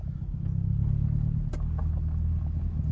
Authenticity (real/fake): real